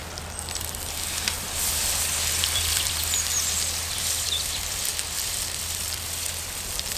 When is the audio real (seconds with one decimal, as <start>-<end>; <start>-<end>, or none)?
0.0-2.4; 3.0-3.8